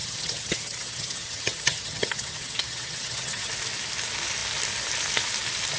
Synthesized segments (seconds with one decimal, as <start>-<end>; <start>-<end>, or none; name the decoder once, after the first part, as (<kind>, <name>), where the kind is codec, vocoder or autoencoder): 0.0-3.5 (vocoder, HiFi-GAN)